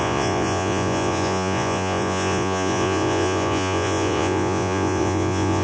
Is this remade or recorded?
remade